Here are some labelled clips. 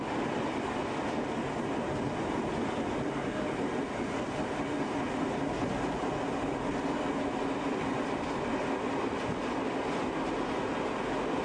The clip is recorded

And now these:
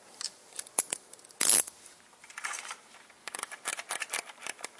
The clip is remade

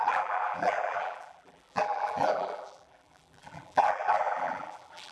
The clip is remade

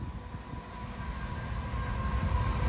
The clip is recorded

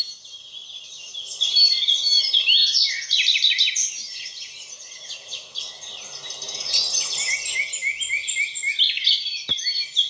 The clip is recorded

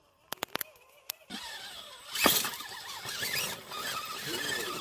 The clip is recorded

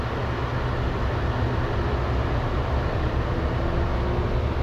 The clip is recorded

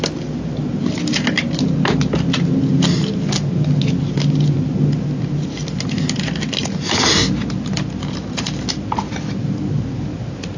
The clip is recorded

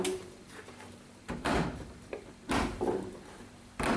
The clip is remade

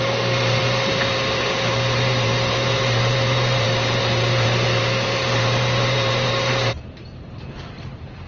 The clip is remade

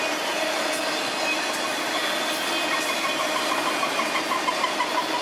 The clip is recorded